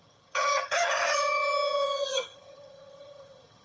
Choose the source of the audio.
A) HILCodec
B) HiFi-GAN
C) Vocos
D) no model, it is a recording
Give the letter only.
B